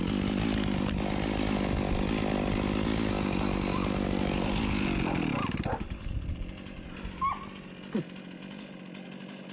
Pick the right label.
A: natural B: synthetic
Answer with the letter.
A